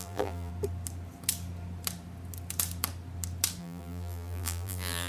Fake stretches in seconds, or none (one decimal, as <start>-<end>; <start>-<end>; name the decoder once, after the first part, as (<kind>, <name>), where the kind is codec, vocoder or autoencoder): 0.0-0.5 (vocoder, BigVGAN v2); 3.6-5.1

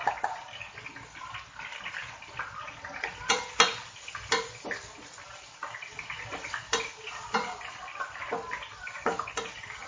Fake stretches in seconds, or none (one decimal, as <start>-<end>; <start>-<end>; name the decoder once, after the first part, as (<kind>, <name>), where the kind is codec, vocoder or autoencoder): none